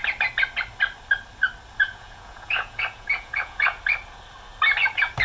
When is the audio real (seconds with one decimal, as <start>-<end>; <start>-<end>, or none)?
0.0-1.8; 3.8-5.2